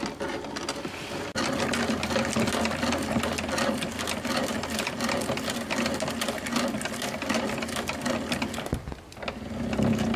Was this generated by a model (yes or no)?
no